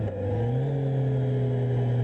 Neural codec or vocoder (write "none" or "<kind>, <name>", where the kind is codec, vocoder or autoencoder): none